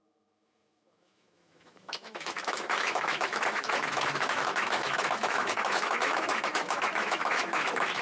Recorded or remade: remade